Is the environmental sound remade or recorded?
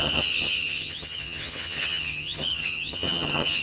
remade